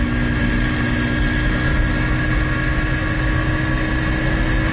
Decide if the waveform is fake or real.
real